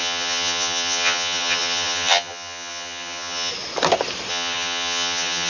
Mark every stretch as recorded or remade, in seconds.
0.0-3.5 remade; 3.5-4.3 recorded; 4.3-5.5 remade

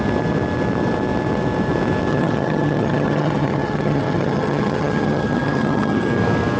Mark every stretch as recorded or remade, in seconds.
0.0-2.1 recorded; 2.1-6.1 remade; 6.1-6.6 recorded

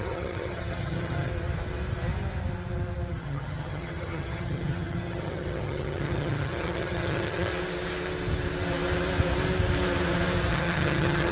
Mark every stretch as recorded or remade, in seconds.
0.0-1.3 remade; 1.3-3.1 recorded; 3.1-7.5 remade; 7.5-10.5 recorded; 10.5-11.3 remade

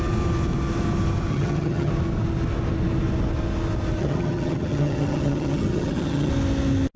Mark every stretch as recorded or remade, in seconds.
0.0-1.3 recorded; 1.3-1.9 remade; 1.9-4.0 recorded; 4.0-6.3 remade; 6.3-7.0 recorded